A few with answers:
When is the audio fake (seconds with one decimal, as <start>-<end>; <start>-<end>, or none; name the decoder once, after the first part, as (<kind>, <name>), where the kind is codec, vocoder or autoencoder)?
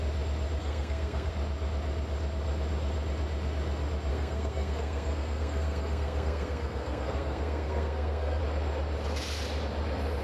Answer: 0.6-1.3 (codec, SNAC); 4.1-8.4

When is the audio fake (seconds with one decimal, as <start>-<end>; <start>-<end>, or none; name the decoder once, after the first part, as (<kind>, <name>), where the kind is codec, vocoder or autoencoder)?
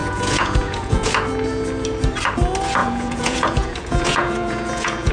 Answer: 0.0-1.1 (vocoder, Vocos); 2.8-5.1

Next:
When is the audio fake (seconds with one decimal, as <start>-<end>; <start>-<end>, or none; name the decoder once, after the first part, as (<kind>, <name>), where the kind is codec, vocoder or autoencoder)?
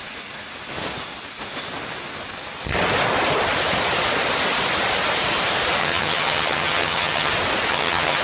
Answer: 5.8-7.3 (vocoder, HiFi-GAN); 7.7-8.2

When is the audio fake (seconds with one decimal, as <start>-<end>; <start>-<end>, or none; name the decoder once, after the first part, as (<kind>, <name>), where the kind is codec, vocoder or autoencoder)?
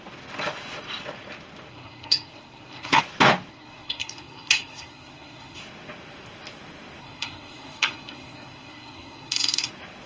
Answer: 1.7-3.0 (codec, SNAC); 3.5-5.6; 7.0-9.7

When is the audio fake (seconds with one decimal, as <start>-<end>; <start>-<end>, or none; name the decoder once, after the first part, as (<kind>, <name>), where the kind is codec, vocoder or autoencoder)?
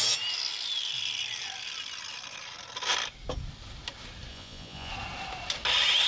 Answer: 4.3-4.9 (vocoder, Vocos)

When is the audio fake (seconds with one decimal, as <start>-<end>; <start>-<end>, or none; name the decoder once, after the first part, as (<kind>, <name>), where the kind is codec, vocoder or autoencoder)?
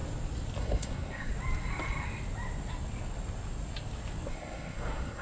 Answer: 0.6-1.3 (codec, SNAC); 4.3-5.2